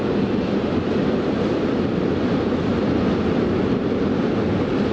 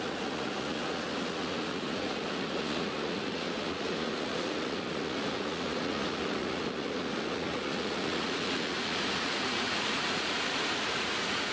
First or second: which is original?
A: first